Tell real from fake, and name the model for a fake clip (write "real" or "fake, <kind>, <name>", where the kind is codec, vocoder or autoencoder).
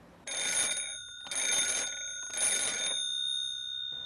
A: real